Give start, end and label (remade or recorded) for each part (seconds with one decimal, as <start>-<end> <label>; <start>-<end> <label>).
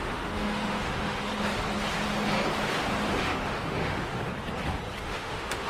0.0-1.3 remade; 1.3-3.2 recorded; 3.2-4.2 remade; 4.2-5.0 recorded; 5.0-5.7 remade